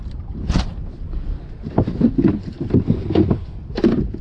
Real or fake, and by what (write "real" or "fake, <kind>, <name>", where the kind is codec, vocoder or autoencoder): fake, vocoder, BigVGAN v2